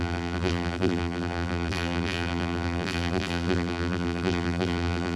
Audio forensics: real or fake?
fake